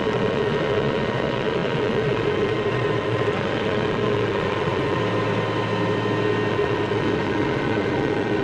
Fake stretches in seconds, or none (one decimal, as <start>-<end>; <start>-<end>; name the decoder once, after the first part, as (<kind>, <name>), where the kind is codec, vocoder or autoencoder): 0.0-5.0 (vocoder, Vocos); 6.5-8.4